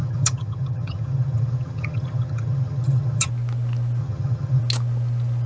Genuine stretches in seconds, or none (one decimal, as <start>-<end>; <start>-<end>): 3.3-4.0; 4.6-5.5